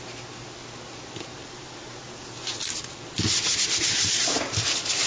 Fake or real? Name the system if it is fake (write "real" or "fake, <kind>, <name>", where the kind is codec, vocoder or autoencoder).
real